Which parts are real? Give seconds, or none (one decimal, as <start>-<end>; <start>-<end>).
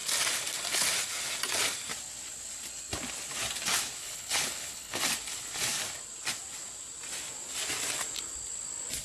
0.0-4.0; 5.0-9.0